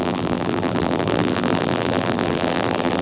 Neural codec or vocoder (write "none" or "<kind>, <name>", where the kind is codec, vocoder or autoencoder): vocoder, BigVGAN v2